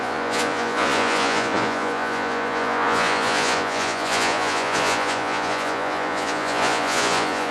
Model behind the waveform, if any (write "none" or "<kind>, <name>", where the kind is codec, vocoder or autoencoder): vocoder, Vocos